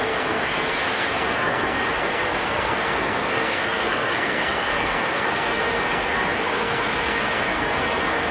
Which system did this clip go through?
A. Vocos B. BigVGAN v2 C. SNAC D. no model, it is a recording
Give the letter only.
C